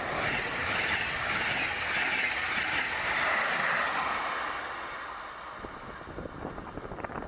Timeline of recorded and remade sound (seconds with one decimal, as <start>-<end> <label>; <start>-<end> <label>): 0.0-7.3 recorded